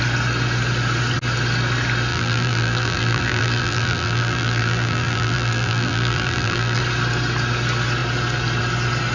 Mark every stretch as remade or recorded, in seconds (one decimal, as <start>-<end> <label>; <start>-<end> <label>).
0.0-2.1 recorded; 2.1-6.8 remade; 6.8-9.1 recorded